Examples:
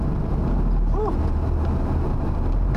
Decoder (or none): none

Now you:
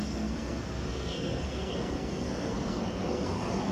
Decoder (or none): codec, SNAC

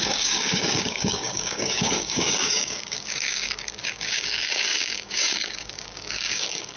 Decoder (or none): codec, DAC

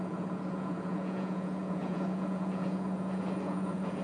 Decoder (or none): vocoder, Vocos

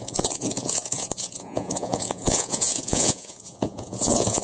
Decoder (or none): vocoder, Vocos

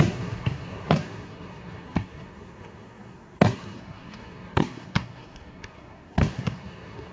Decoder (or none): codec, SNAC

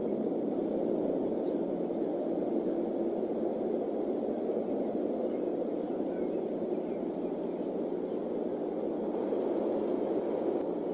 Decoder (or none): none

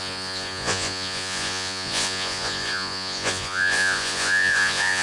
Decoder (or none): vocoder, Vocos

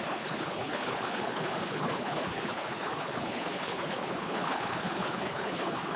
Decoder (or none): codec, HILCodec